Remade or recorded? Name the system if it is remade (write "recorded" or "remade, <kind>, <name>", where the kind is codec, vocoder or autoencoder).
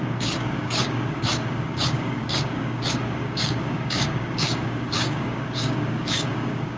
remade, codec, DAC